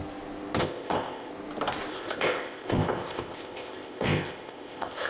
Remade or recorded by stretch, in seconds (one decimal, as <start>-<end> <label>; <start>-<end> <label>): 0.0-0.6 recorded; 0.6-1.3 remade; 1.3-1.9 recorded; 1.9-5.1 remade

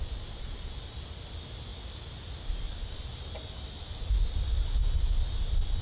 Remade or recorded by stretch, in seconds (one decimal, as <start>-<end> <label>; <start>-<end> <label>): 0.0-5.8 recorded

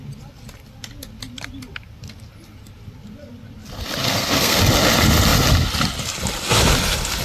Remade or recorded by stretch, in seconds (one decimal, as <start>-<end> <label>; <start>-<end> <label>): 0.0-4.0 recorded; 4.0-4.6 remade; 4.6-7.2 recorded

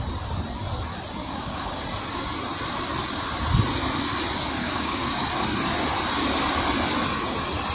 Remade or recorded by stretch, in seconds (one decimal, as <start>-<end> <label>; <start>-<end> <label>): 0.0-1.2 recorded; 1.2-1.8 remade; 1.8-4.6 recorded; 4.6-5.3 remade; 5.3-7.7 recorded

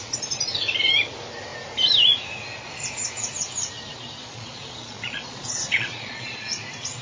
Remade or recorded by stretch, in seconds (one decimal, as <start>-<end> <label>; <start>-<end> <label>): 0.0-4.2 recorded; 4.2-6.5 remade; 6.5-7.0 recorded